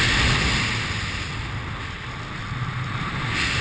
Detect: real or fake real